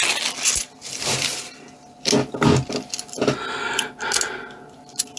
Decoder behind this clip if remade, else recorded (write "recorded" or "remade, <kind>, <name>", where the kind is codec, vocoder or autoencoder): recorded